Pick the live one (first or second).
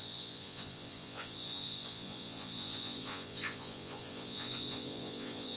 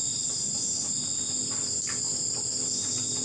second